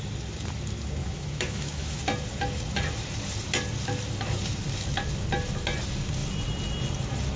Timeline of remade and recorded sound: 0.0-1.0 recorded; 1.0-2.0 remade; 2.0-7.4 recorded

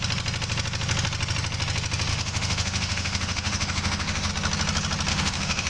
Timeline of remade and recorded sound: 0.0-2.1 recorded; 2.1-4.3 remade; 4.3-5.1 recorded; 5.1-5.7 remade

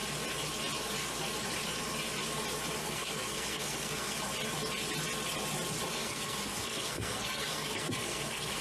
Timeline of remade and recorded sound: 0.0-2.8 recorded; 2.8-4.2 remade; 4.2-5.9 recorded; 5.9-8.6 remade

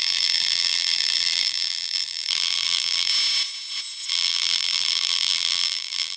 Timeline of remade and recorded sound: 0.0-3.1 remade; 3.1-4.1 recorded; 4.1-6.2 remade